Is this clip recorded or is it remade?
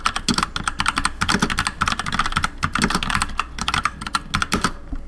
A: recorded